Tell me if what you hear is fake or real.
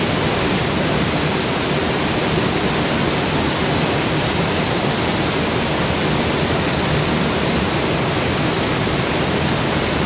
real